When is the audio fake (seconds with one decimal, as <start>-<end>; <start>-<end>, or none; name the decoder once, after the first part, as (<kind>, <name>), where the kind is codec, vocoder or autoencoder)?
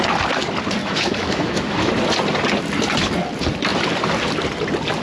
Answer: 0.8-1.9 (autoencoder, DAC-VAE)